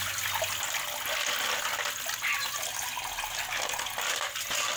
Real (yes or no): yes